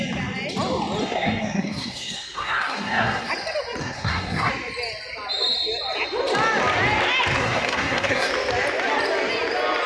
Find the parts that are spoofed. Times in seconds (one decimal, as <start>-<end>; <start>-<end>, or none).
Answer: 1.0-3.3; 3.8-4.5; 7.4-8.3